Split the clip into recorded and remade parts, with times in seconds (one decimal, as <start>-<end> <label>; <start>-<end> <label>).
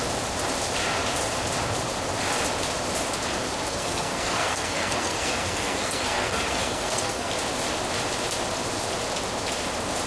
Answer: 0.0-3.7 recorded; 3.7-7.3 remade; 7.3-10.1 recorded